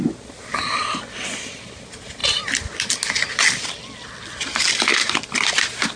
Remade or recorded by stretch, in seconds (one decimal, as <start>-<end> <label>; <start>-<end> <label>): 0.0-6.0 recorded